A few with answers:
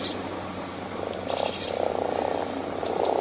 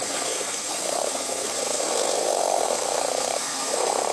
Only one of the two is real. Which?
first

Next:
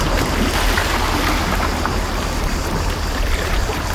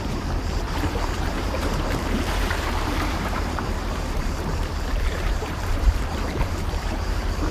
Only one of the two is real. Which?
first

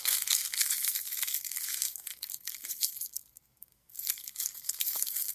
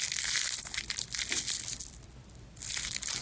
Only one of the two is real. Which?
second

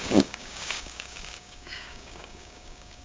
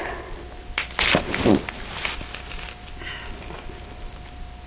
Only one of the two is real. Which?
second